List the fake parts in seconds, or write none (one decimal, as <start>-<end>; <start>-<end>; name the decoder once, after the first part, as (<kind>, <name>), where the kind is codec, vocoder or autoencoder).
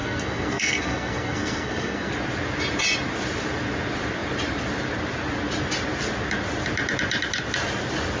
0.0-2.1 (codec, SNAC)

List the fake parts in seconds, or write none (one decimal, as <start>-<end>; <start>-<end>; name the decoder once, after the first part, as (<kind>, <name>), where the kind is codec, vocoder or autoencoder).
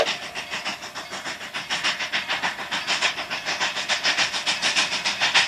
none